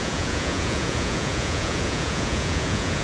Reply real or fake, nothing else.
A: fake